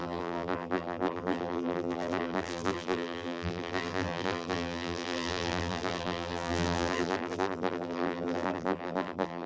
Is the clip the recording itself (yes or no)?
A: no